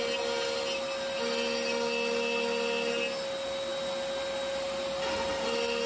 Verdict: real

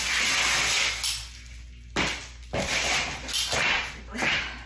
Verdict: real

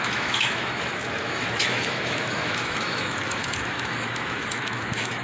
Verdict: fake